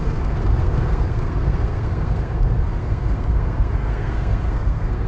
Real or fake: fake